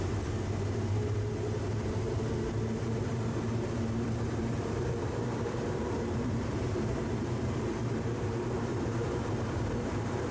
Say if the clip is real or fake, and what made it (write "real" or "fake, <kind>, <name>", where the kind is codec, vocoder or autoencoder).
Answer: fake, vocoder, BigVGAN v2